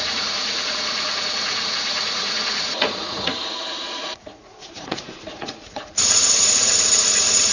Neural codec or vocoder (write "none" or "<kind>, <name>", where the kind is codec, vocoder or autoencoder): vocoder, Vocos